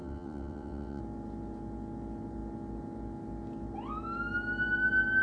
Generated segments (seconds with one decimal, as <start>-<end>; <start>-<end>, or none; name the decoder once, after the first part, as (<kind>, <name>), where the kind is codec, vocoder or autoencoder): 0.0-1.0 (vocoder, WaveNeXt)